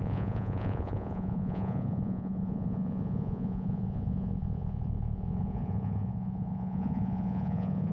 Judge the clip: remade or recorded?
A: remade